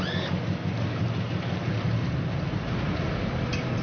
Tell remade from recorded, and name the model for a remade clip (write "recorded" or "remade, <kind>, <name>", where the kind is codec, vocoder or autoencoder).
recorded